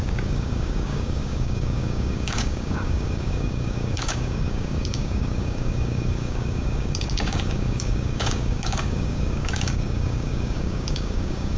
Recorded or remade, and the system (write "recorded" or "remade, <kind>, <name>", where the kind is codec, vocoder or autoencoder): remade, codec, DAC